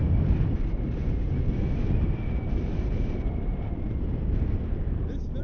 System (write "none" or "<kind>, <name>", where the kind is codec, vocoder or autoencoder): none